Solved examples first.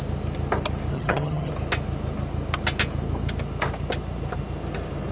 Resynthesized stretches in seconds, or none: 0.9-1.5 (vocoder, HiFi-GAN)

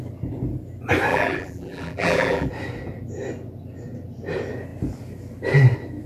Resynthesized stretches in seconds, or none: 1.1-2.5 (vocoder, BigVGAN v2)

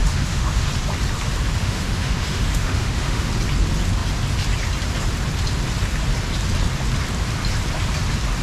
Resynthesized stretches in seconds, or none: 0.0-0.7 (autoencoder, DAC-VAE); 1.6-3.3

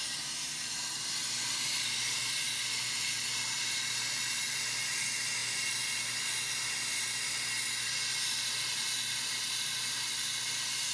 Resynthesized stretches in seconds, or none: none

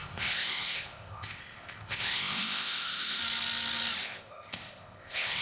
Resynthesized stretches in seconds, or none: 0.0-3.2 (codec, ZipCodec); 4.0-5.4